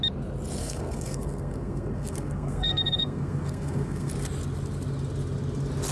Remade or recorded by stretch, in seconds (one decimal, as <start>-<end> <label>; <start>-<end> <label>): 0.0-0.6 recorded; 0.6-4.1 remade; 4.1-5.9 recorded